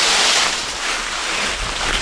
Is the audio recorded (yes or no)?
yes